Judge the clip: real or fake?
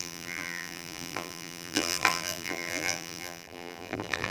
fake